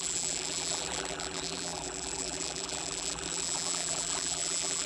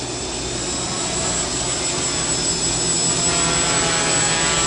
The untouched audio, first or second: second